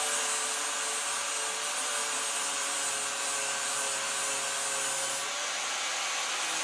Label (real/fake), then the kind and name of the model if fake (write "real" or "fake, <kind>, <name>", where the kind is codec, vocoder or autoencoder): real